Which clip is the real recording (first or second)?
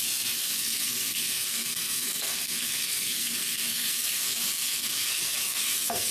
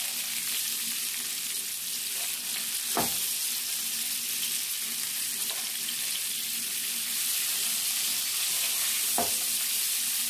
second